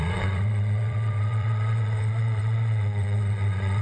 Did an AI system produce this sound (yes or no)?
yes